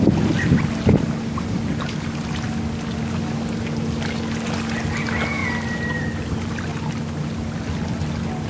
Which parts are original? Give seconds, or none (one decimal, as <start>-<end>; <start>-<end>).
0.0-8.5